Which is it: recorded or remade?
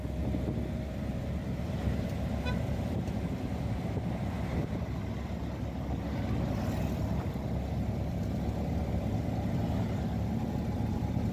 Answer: recorded